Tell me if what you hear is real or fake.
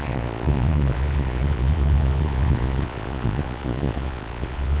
fake